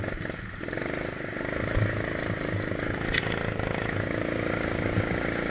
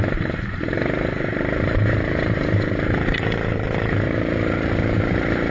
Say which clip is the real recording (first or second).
first